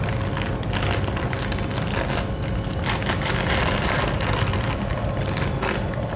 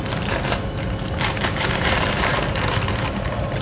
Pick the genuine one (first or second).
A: first